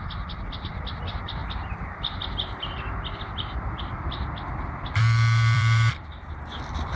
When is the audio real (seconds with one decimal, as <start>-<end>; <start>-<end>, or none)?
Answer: 1.4-5.0